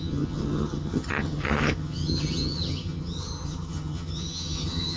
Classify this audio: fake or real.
fake